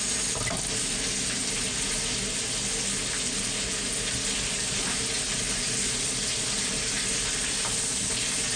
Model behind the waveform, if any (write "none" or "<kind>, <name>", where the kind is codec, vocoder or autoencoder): none